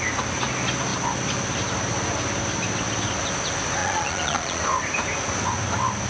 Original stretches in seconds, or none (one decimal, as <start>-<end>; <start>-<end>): 0.0-3.8; 4.6-6.1